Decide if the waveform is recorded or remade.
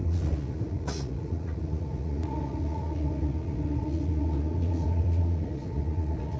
remade